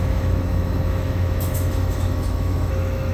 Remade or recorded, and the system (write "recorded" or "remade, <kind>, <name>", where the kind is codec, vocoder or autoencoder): remade, autoencoder, DAC-VAE